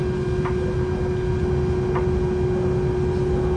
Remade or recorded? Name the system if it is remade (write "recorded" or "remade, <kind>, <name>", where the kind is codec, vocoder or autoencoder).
recorded